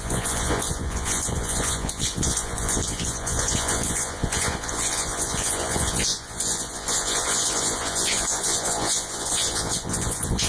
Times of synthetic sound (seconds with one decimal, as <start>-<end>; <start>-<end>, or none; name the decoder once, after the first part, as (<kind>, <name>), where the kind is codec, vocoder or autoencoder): 0.0-10.5 (vocoder, Vocos)